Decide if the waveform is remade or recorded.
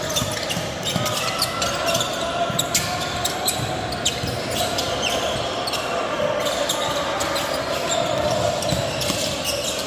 recorded